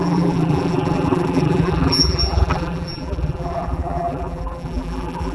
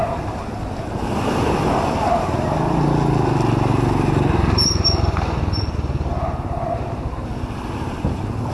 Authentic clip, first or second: second